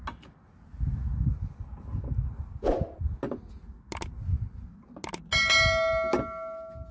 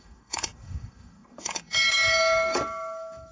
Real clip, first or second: first